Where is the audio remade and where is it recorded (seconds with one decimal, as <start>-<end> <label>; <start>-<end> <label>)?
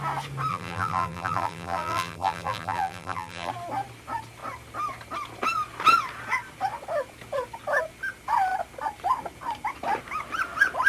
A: 0.0-0.5 recorded; 0.5-3.5 remade; 3.5-10.9 recorded